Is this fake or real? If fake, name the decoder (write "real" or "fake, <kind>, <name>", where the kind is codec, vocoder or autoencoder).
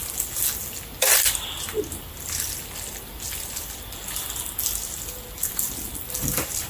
real